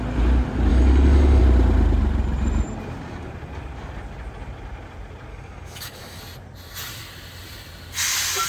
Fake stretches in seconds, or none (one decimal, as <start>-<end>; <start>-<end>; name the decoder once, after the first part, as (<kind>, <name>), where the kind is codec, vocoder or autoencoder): 0.7-1.4 (codec, DAC); 5.3-6.2